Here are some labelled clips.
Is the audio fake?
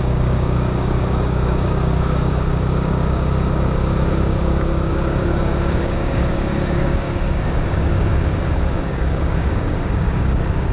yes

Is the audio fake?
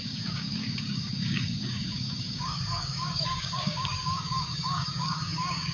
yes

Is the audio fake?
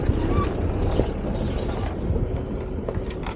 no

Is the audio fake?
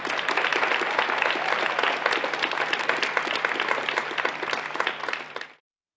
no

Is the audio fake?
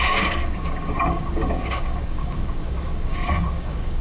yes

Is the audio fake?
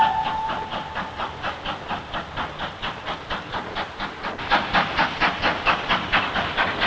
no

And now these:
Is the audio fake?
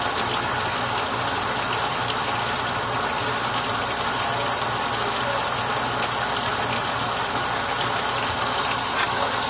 no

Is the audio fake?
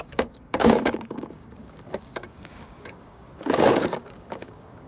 yes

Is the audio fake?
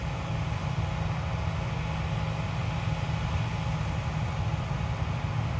no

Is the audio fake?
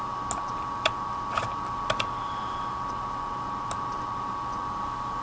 no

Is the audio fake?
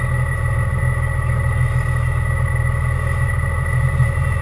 no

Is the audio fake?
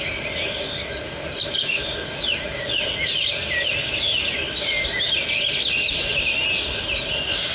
no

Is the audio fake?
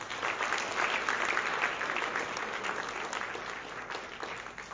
no